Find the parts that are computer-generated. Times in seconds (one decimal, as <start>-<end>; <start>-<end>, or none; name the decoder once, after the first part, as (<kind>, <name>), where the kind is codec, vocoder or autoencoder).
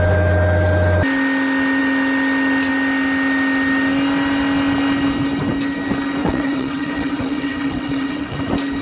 6.2-8.4 (vocoder, WaveNeXt)